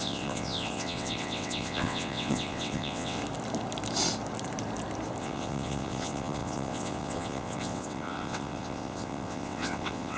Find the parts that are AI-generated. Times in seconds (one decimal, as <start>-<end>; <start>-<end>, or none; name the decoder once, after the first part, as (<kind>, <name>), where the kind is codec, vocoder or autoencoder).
0.0-3.2 (vocoder, WaveNeXt); 5.2-10.2